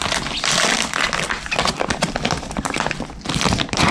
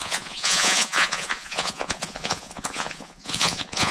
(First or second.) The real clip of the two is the first